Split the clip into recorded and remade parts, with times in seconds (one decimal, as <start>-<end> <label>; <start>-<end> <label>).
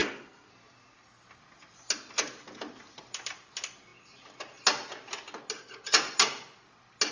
0.0-0.5 remade; 0.5-7.1 recorded